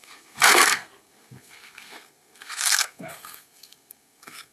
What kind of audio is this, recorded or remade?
remade